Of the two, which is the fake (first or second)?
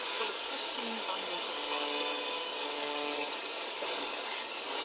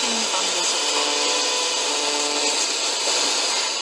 first